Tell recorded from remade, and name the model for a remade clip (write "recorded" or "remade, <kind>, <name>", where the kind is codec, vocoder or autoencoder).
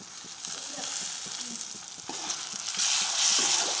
recorded